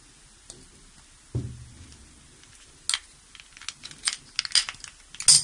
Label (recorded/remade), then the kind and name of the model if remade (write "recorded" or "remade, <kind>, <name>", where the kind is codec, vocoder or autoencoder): recorded